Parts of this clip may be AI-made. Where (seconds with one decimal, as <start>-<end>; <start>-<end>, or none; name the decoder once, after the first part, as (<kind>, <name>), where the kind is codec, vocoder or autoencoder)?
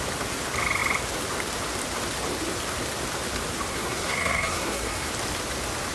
3.7-5.1 (codec, SNAC)